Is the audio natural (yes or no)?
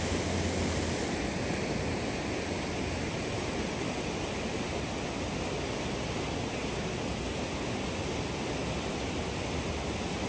yes